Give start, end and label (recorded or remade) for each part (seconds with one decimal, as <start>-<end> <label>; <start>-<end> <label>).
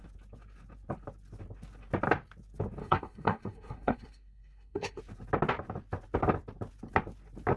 0.0-2.8 recorded; 2.8-5.0 remade; 5.0-7.6 recorded